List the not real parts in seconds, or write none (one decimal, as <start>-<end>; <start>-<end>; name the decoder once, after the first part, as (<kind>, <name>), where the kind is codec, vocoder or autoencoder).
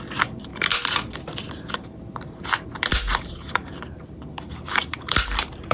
0.0-0.5 (vocoder, BigVGAN v2); 1.5-5.7